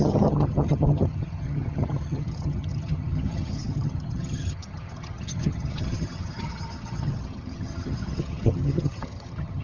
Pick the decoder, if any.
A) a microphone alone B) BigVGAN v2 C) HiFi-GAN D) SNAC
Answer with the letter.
C